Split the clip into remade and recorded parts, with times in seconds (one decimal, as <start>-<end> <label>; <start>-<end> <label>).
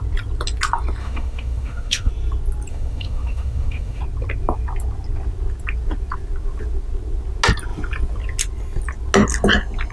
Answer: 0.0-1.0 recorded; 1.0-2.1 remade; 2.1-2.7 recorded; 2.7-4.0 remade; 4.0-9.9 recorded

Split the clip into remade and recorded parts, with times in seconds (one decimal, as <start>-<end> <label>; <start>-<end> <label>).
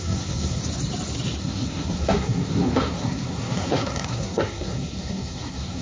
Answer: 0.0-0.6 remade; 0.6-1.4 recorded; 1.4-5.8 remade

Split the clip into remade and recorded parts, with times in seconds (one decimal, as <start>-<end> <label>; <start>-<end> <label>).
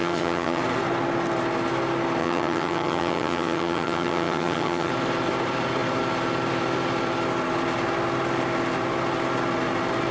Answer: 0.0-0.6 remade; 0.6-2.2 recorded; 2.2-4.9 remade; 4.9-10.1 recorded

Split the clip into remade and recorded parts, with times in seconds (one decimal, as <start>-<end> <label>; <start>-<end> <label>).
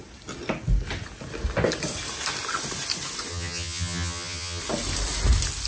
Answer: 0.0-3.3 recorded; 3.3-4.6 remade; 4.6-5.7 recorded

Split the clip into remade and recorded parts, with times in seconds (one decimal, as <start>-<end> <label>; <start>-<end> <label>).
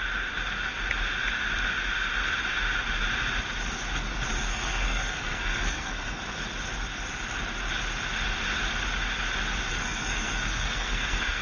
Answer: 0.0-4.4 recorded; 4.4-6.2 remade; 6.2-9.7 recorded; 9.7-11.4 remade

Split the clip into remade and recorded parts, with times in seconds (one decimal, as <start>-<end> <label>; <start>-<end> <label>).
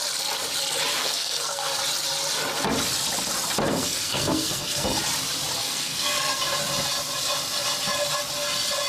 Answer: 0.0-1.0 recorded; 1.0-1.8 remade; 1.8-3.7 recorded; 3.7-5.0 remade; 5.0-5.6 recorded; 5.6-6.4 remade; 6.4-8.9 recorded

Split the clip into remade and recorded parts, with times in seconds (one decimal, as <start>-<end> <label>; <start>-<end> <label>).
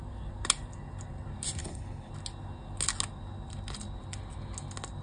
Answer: 0.0-1.6 recorded; 1.6-2.1 remade; 2.1-5.0 recorded